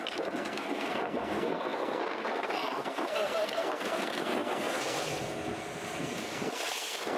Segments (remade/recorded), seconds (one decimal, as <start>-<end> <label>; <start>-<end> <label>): 0.0-7.2 remade